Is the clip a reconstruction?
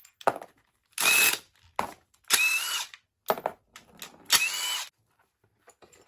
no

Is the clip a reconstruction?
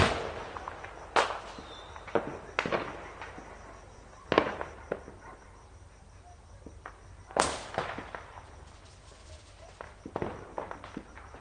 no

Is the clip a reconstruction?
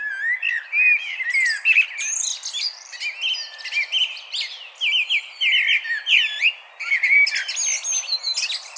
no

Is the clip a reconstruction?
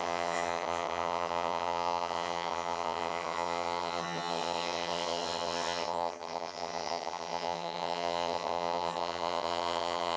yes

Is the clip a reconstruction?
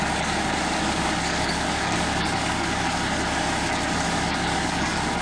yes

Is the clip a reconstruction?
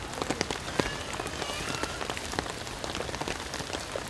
no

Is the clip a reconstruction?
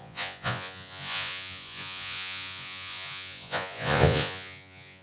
yes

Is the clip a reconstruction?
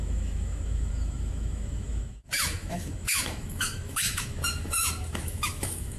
yes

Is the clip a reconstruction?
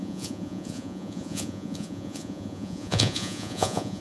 yes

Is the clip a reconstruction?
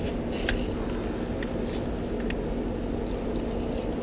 no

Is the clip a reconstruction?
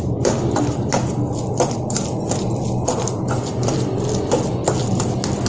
no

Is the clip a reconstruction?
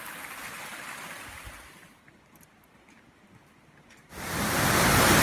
no